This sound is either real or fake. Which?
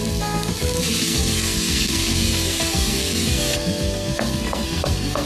fake